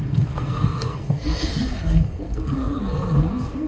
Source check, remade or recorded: remade